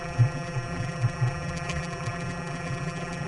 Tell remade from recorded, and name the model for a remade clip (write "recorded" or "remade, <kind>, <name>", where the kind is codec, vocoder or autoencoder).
remade, vocoder, BigVGAN v2